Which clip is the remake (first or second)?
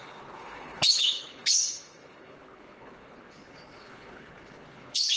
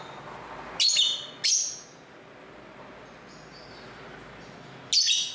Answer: first